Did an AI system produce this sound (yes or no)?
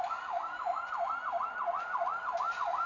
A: no